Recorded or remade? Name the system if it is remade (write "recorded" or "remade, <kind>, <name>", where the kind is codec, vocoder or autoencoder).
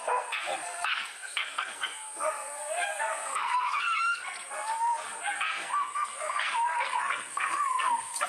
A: remade, codec, SNAC